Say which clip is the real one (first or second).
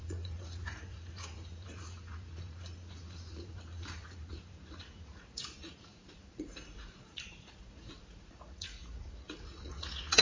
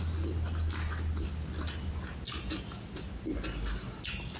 second